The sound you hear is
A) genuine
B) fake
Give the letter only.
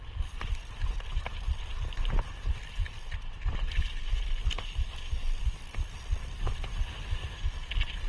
A